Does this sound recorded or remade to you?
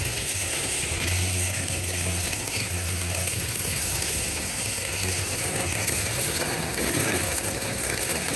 remade